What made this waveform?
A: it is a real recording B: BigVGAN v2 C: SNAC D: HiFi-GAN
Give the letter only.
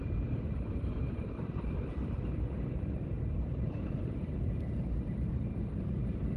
B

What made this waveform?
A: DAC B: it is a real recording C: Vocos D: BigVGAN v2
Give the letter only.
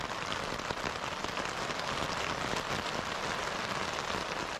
B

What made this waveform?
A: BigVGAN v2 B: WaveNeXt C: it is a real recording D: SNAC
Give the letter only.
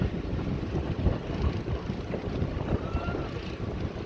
C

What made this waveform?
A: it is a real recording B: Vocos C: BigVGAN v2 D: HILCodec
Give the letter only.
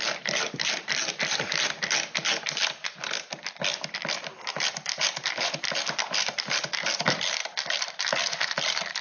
C